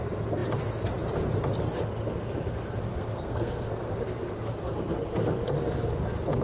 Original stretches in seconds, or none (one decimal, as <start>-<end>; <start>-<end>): 0.0-2.9; 3.9-6.4